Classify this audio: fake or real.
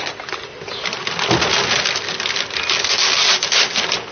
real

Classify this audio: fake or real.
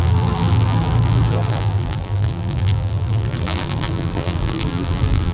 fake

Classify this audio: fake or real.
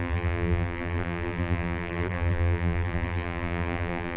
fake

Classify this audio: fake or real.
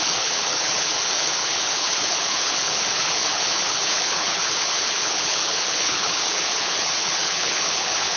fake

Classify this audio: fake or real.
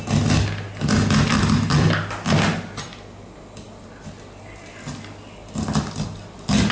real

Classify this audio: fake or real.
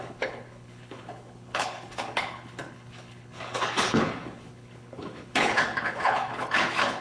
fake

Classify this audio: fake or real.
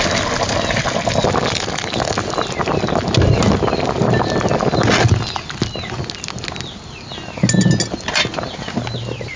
real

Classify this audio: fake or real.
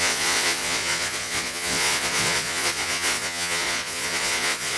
fake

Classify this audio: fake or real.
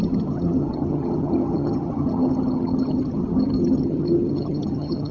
fake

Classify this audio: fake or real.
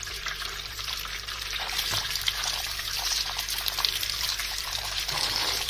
fake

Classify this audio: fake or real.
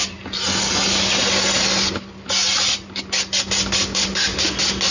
real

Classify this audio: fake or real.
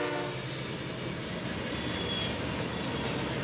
real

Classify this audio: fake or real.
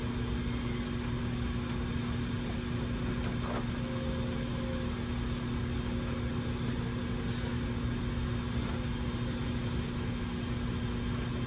real